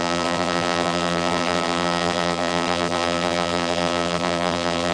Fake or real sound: fake